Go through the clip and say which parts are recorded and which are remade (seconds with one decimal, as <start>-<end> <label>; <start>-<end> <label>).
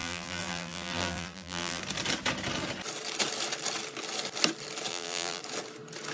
0.0-1.8 remade; 1.8-4.9 recorded; 4.9-5.4 remade; 5.4-6.1 recorded